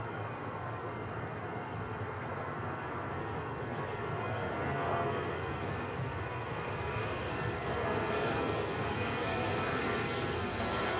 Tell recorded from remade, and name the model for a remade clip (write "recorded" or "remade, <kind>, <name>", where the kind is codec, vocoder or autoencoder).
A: remade, codec, SNAC